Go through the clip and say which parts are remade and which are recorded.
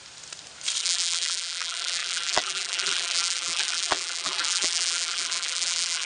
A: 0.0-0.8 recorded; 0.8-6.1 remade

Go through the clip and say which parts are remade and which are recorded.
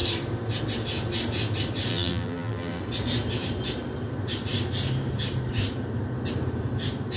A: 0.0-1.9 recorded; 1.9-2.8 remade; 2.8-7.2 recorded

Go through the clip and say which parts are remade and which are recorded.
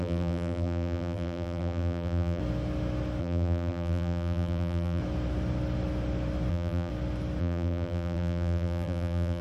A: 0.0-2.4 remade; 2.4-3.2 recorded; 3.2-5.0 remade; 5.0-6.5 recorded; 6.5-6.9 remade; 6.9-7.4 recorded; 7.4-9.4 remade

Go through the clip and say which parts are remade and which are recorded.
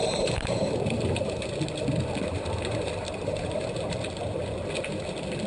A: 0.0-0.6 remade; 0.6-2.3 recorded; 2.3-3.7 remade; 3.7-5.5 recorded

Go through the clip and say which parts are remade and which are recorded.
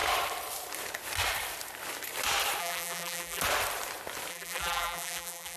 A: 0.0-2.6 recorded; 2.6-3.4 remade; 3.4-4.3 recorded; 4.3-5.6 remade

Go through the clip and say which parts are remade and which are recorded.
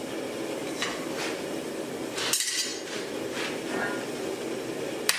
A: 0.0-0.9 recorded; 0.9-1.7 remade; 1.7-5.2 recorded